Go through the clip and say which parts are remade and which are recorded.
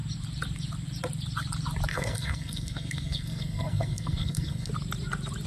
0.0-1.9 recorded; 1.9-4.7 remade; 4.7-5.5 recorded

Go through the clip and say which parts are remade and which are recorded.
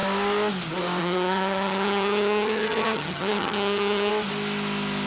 0.0-1.0 recorded; 1.0-4.1 remade; 4.1-5.1 recorded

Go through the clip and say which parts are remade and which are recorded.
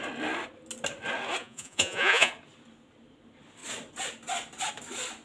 0.0-1.4 recorded; 1.4-2.3 remade; 2.3-5.2 recorded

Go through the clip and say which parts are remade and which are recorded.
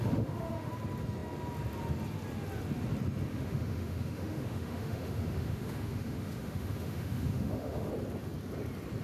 0.0-0.7 remade; 0.7-3.3 recorded; 3.3-7.9 remade; 7.9-9.0 recorded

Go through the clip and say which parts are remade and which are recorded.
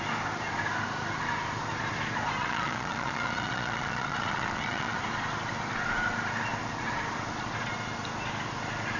0.0-2.4 recorded; 2.4-5.0 remade; 5.0-9.0 recorded